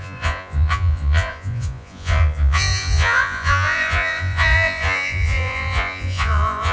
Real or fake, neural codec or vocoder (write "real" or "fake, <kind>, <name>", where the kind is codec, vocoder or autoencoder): fake, vocoder, Vocos